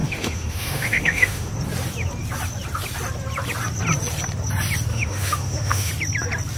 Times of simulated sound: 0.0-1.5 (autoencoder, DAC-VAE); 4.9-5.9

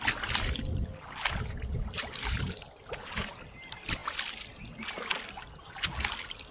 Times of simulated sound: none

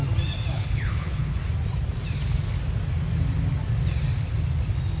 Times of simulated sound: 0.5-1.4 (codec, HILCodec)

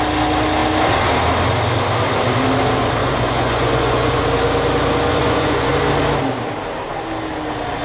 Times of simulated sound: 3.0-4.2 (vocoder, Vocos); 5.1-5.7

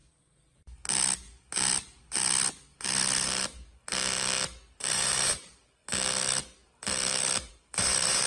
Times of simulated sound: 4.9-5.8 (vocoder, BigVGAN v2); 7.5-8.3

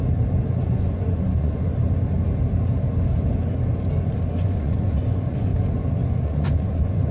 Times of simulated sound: 0.7-1.7 (vocoder, Vocos); 4.3-5.5; 6.2-7.1

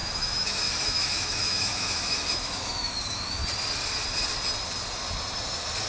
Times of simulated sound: 0.0-3.4 (autoencoder, DAC-VAE)

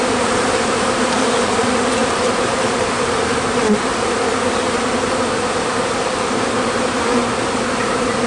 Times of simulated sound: 0.0-3.9 (vocoder, BigVGAN v2); 6.1-7.2; 7.7-8.3